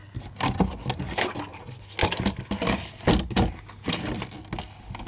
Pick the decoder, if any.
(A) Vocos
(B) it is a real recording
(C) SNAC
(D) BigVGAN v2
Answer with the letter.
B